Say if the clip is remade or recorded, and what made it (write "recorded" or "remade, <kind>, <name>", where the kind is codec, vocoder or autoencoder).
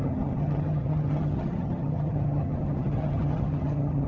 remade, vocoder, HiFi-GAN